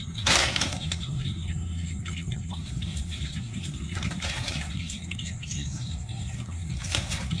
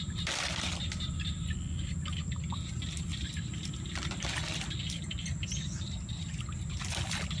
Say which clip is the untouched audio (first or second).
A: second